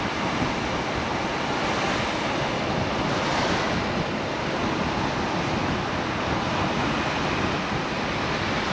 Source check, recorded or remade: recorded